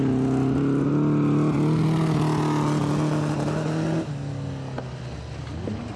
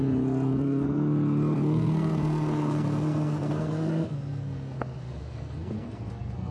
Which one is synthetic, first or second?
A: second